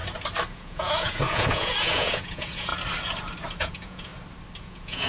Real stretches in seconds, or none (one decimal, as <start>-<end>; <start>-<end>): 0.0-0.5; 2.7-3.6; 4.1-4.6